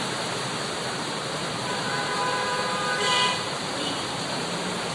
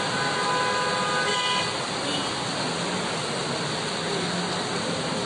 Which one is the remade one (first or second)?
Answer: first